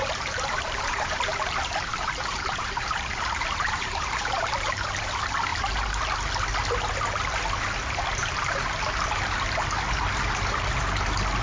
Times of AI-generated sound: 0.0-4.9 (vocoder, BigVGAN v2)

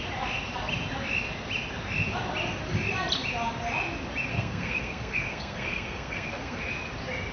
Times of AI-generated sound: 4.3-6.6 (codec, SNAC)